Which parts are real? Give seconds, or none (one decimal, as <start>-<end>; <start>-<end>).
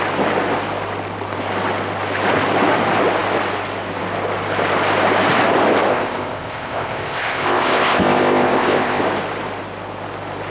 0.0-5.9; 9.0-10.5